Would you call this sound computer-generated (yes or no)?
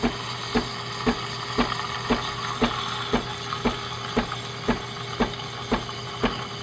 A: no